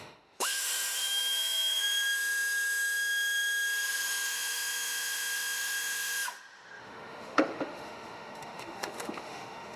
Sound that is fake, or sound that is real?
fake